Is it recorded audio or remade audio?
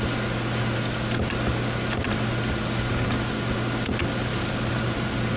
recorded